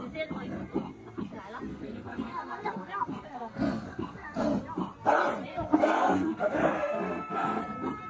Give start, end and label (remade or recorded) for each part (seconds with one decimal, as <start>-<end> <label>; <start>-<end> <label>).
0.0-1.7 recorded; 1.7-4.4 remade; 4.4-5.5 recorded; 5.5-7.6 remade; 7.6-8.1 recorded